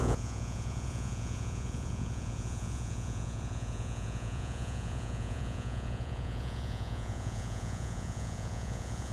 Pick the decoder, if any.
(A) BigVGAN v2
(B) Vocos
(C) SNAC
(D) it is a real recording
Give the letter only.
B